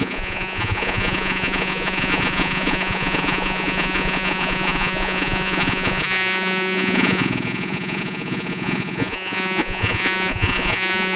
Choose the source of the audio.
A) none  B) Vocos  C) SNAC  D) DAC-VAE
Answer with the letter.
B